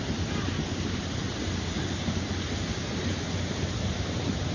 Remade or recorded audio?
recorded